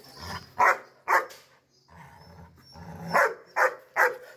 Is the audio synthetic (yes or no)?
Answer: no